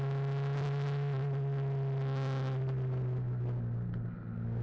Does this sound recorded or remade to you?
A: recorded